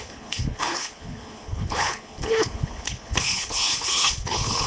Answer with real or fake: fake